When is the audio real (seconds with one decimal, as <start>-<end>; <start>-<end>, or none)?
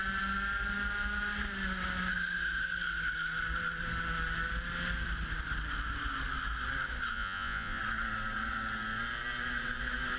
0.0-7.1; 7.8-10.2